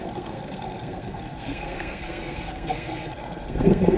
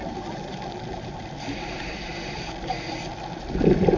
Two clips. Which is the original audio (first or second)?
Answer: second